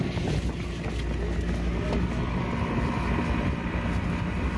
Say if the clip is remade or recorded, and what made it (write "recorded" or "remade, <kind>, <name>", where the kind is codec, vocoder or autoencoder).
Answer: recorded